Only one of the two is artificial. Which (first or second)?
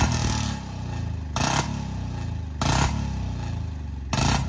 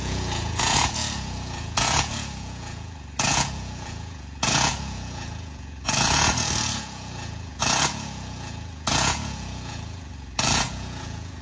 second